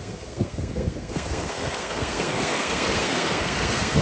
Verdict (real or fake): fake